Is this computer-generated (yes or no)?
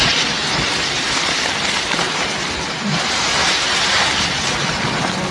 no